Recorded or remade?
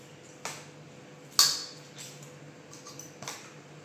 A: recorded